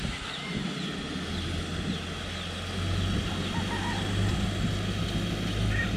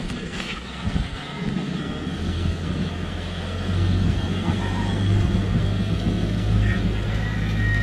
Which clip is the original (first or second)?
first